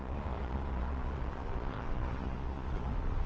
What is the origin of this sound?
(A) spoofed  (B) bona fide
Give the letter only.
A